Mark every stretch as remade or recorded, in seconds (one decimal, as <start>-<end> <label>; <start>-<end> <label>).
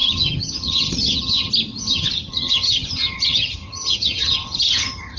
0.0-1.5 remade; 1.5-1.9 recorded; 1.9-5.2 remade